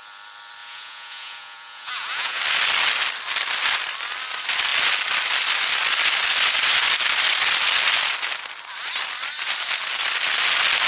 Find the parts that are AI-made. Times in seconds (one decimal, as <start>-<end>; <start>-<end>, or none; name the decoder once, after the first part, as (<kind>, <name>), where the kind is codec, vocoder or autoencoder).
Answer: 0.6-2.4 (vocoder, Vocos)